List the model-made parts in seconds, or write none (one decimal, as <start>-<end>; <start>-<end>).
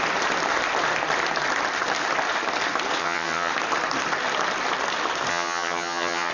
3.0-3.5; 5.3-6.3